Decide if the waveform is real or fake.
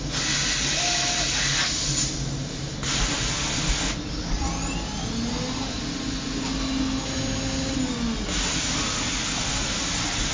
real